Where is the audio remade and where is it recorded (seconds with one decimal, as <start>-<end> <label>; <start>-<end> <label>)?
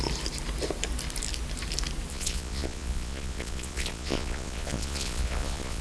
0.0-2.1 recorded; 2.1-5.8 remade